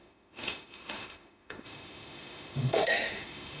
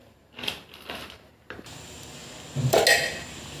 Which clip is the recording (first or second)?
second